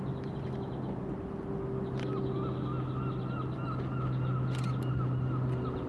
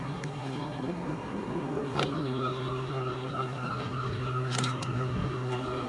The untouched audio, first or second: first